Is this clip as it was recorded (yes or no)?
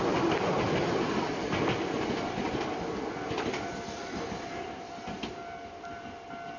yes